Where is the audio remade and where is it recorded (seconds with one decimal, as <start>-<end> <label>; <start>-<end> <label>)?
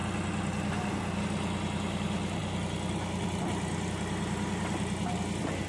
0.0-5.7 recorded